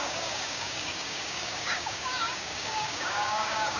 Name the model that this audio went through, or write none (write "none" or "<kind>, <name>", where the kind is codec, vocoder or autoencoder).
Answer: codec, DAC